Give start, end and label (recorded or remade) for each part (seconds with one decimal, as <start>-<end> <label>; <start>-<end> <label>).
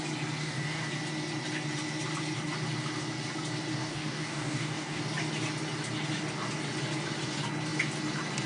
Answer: 0.0-0.4 recorded; 0.4-0.9 remade; 0.9-3.8 recorded; 3.8-5.0 remade; 5.0-8.5 recorded